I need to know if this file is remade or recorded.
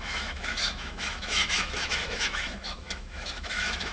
remade